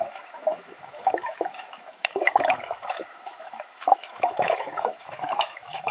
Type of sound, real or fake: fake